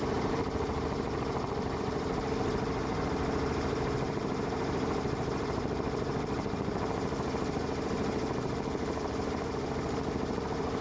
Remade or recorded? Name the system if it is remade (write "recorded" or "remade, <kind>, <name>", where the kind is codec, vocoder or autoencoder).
remade, vocoder, BigVGAN v2